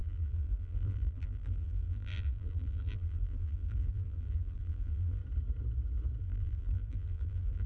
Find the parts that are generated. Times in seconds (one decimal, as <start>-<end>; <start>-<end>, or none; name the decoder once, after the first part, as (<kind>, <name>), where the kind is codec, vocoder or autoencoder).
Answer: 0.0-5.2 (vocoder, BigVGAN v2); 6.2-7.7